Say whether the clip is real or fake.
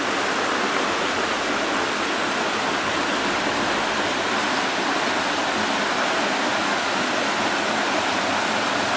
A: real